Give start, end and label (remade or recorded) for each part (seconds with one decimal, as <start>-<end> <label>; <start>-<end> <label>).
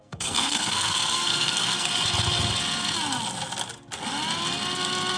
0.0-1.9 remade; 1.9-5.2 recorded